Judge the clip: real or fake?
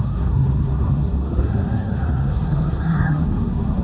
fake